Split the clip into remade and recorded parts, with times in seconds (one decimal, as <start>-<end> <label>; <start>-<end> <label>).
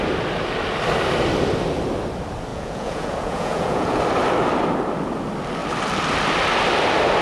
0.0-2.5 recorded; 2.5-4.0 remade; 4.0-7.2 recorded